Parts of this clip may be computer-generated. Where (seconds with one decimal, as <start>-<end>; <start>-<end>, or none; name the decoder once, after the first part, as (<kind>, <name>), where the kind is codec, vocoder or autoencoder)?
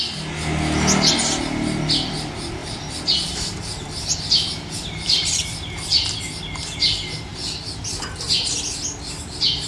2.6-5.4 (vocoder, BigVGAN v2); 7.3-7.9